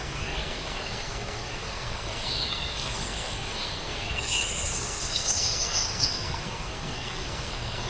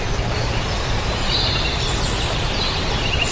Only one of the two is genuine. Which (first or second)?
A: second